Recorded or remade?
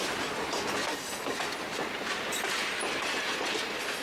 recorded